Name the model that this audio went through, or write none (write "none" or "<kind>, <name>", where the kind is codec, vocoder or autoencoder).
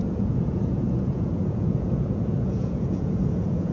vocoder, Vocos